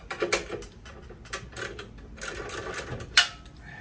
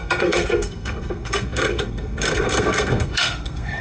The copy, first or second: second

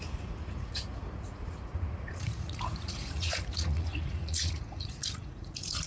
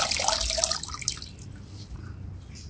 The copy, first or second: first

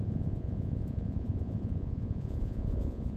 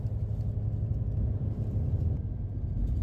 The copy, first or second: first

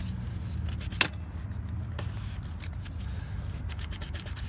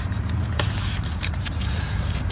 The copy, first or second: second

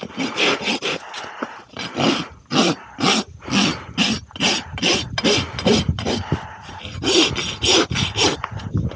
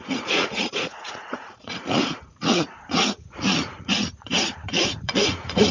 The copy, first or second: second